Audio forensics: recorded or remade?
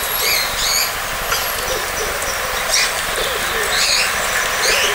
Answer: recorded